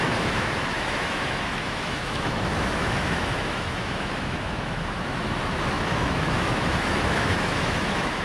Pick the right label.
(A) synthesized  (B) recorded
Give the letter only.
A